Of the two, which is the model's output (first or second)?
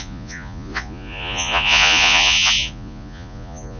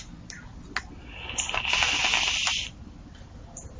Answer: first